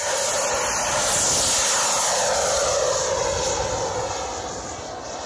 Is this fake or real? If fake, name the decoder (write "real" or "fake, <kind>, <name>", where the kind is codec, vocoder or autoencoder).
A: real